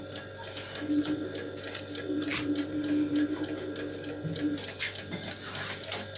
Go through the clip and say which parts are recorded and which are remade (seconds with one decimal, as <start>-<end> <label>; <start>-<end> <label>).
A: 0.0-6.2 recorded